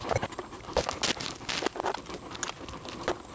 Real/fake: real